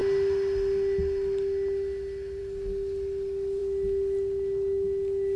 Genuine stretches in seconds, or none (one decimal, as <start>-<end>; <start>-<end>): 0.0-5.4